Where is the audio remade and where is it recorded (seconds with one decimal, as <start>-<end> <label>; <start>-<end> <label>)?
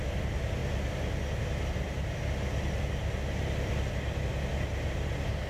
0.0-5.5 recorded